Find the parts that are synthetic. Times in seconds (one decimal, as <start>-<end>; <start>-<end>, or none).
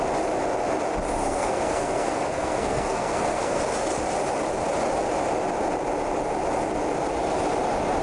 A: 1.2-3.6